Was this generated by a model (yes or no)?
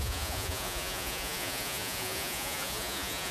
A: yes